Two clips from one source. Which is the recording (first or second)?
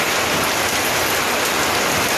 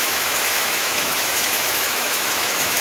first